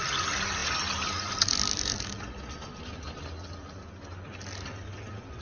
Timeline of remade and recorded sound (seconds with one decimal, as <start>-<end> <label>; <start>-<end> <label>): 0.0-5.4 recorded